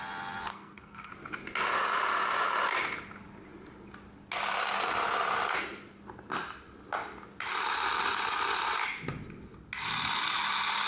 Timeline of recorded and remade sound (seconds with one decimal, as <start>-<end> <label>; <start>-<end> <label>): 0.0-0.5 recorded; 0.5-1.1 remade; 1.1-10.9 recorded